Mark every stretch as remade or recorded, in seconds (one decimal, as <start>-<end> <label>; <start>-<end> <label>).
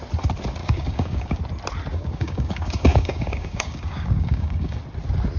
0.0-0.6 recorded; 0.6-1.4 remade; 1.4-1.9 recorded; 1.9-4.8 remade; 4.8-5.4 recorded